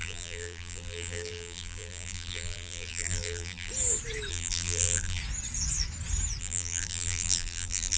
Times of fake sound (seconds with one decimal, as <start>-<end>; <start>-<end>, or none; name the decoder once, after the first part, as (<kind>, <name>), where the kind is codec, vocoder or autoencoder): 0.0-3.7 (vocoder, BigVGAN v2); 4.3-5.2; 6.4-8.0